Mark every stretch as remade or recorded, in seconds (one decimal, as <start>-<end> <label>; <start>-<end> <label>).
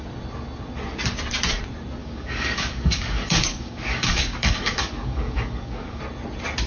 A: 0.0-2.0 recorded; 2.0-6.0 remade; 6.0-6.7 recorded